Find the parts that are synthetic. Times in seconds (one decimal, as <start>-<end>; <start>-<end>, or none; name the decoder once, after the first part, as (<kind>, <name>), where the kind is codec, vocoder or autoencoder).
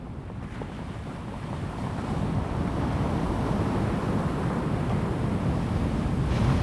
none